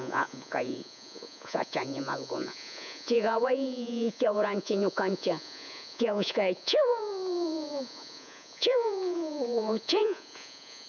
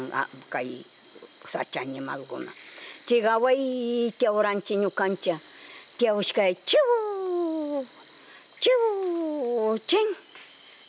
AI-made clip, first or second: first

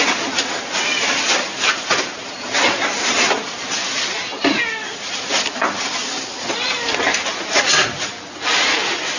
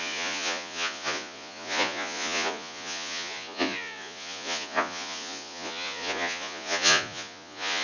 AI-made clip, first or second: second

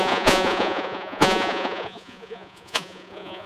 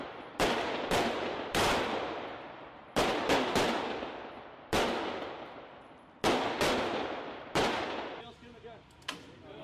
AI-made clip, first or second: first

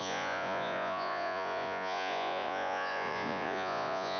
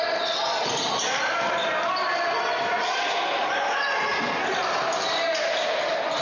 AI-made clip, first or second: first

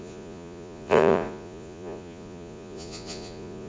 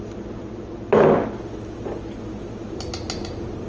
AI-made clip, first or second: first